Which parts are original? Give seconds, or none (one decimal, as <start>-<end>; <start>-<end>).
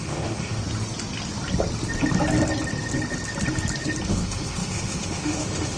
0.6-4.1